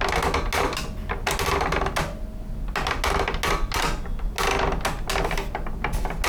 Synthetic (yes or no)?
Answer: no